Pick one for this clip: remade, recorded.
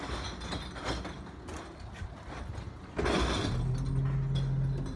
recorded